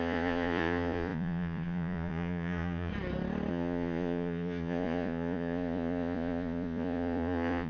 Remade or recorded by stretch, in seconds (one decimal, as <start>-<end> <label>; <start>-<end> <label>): 0.0-2.9 remade; 2.9-3.5 recorded; 3.5-7.7 remade